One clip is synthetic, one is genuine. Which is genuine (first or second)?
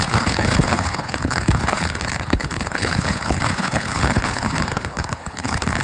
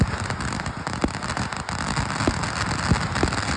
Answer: second